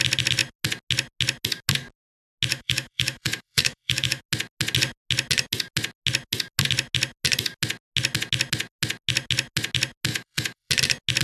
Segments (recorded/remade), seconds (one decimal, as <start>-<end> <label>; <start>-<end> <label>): 0.0-2.5 recorded; 2.5-4.2 remade; 4.2-10.1 recorded; 10.1-10.7 remade; 10.7-11.2 recorded